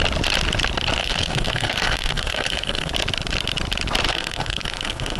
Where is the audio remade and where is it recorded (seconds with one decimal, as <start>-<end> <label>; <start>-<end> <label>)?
0.0-1.0 recorded; 1.0-2.9 remade; 2.9-4.1 recorded; 4.1-5.2 remade